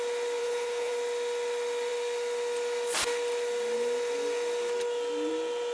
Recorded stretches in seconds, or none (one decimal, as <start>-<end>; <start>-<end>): 0.0-0.4; 0.9-5.7